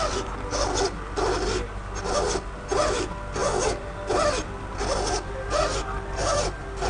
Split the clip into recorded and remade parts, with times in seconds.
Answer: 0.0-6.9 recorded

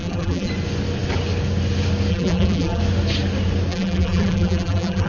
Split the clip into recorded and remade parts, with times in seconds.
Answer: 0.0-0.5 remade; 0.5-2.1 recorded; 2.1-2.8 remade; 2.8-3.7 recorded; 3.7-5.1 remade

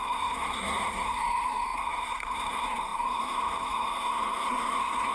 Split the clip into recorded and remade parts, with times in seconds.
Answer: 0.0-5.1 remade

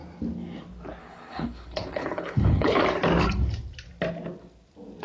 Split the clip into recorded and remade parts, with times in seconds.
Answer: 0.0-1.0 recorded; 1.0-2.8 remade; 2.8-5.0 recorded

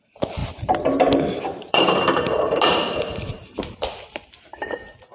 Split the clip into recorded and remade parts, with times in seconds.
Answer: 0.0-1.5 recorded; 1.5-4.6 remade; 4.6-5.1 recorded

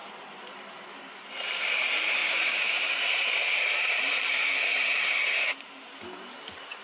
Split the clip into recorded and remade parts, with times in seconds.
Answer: 0.0-1.0 recorded; 1.0-6.8 remade